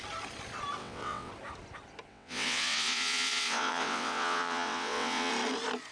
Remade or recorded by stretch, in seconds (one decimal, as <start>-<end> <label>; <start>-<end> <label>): 0.0-0.8 recorded; 0.8-1.3 remade; 1.3-2.1 recorded; 2.1-5.3 remade; 5.3-5.9 recorded